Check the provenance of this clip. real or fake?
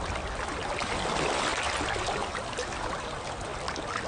real